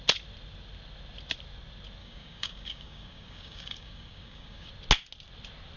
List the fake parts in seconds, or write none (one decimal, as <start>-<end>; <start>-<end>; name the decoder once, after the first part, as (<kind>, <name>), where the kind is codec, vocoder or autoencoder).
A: 2.0-4.7 (codec, DAC)